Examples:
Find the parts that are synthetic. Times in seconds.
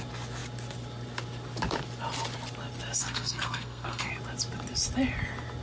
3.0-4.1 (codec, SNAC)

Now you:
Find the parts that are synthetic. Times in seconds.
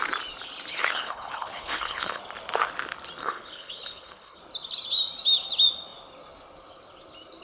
0.7-2.2 (codec, HILCodec); 3.2-4.4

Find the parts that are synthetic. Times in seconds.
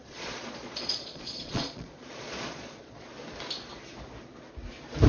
0.0-3.1 (vocoder, Vocos)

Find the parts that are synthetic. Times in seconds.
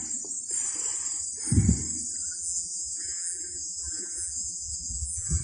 2.2-5.4 (vocoder, BigVGAN v2)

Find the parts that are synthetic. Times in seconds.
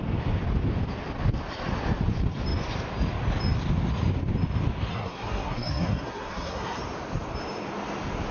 4.9-6.8 (codec, SNAC)